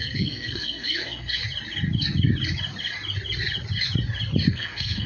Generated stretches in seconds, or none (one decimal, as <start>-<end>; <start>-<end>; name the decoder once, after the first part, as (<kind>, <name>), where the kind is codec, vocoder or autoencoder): 0.0-1.4 (codec, SNAC); 4.5-5.1